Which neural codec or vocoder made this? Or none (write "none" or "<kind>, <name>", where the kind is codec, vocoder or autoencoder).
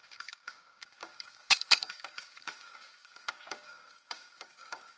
codec, DAC